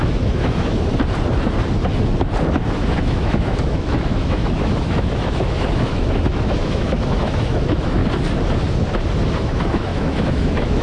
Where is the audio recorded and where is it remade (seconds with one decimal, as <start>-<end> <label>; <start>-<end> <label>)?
0.0-0.9 remade; 0.9-2.5 recorded; 2.5-8.0 remade; 8.0-9.4 recorded; 9.4-10.8 remade